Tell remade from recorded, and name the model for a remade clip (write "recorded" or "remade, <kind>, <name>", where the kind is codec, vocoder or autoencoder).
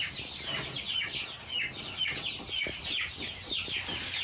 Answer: recorded